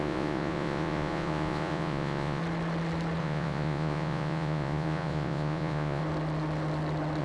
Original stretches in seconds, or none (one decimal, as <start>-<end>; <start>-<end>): 2.4-3.2; 6.0-7.2